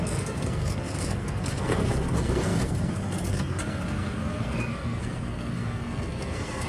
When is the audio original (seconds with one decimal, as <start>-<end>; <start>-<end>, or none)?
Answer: none